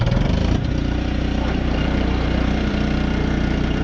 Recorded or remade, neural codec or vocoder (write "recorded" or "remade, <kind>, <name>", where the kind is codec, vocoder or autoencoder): remade, vocoder, BigVGAN v2